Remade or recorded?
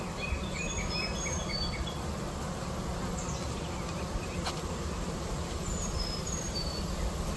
recorded